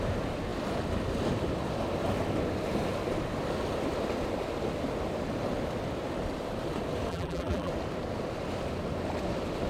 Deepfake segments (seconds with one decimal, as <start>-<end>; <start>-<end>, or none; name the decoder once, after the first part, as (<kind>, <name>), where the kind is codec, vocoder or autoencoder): 7.1-7.7 (vocoder, BigVGAN v2)